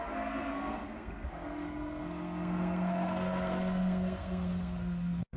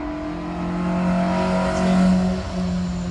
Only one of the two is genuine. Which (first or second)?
second